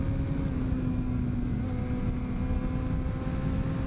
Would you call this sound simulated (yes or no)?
no